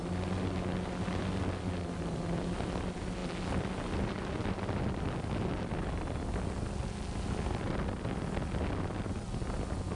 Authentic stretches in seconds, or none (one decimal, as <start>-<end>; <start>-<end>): 0.0-10.0